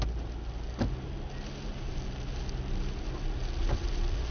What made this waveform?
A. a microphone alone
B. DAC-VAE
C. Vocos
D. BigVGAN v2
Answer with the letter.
A